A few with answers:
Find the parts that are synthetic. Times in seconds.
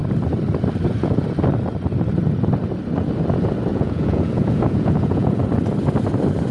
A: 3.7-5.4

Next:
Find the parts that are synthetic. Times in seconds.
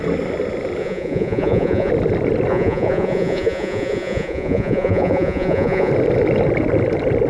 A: 0.8-1.9; 2.5-5.9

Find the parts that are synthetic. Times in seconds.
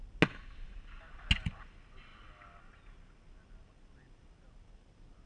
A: none